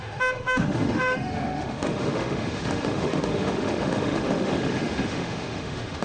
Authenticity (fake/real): fake